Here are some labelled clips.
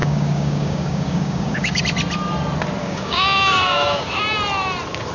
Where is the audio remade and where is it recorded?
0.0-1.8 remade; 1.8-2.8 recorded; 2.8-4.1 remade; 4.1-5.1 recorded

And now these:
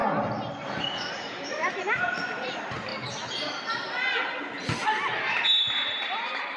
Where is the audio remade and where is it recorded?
0.0-0.6 recorded; 0.6-2.9 remade; 2.9-5.3 recorded; 5.3-6.6 remade

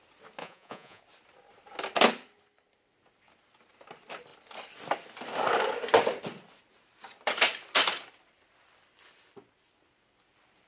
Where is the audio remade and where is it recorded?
0.0-0.4 recorded; 0.4-1.0 remade; 1.0-10.7 recorded